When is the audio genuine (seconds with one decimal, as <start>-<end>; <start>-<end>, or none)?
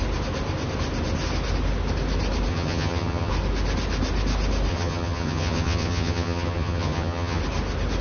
0.0-2.5; 3.3-4.7; 7.4-8.0